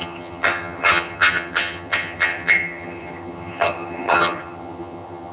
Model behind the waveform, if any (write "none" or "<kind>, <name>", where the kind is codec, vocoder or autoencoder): vocoder, HiFi-GAN